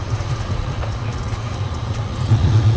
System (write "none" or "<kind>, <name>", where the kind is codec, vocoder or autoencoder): vocoder, Vocos